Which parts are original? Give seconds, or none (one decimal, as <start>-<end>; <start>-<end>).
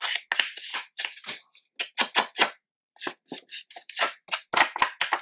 0.0-0.7; 1.5-2.4; 4.1-5.2